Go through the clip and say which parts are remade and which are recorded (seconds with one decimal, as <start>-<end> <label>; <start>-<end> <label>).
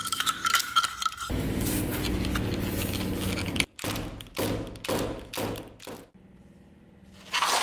0.0-0.8 remade; 0.8-7.6 recorded